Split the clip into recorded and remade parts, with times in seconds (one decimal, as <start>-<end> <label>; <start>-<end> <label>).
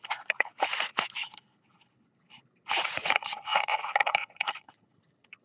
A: 0.0-0.9 remade; 0.9-2.7 recorded; 2.7-5.4 remade